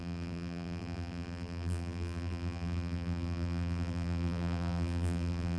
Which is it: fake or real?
fake